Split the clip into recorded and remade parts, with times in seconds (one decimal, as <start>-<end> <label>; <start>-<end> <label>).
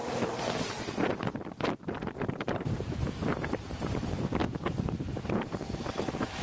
0.0-6.4 remade